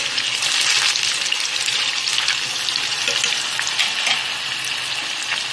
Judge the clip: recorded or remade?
recorded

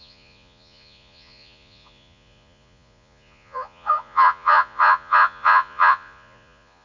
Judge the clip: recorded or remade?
remade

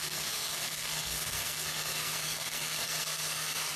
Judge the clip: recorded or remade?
remade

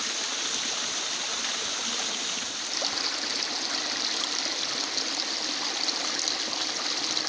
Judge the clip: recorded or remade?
recorded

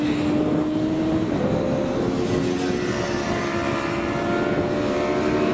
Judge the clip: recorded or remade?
recorded